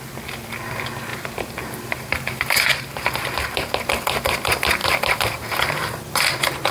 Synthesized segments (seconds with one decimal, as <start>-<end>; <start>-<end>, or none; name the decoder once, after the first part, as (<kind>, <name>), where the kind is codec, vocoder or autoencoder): 1.1-3.1 (vocoder, BigVGAN v2); 4.8-5.6